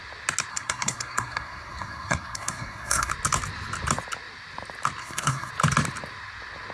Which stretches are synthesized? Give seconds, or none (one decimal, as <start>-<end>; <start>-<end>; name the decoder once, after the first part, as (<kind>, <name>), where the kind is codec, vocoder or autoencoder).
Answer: 0.5-3.1 (codec, SNAC); 5.0-5.5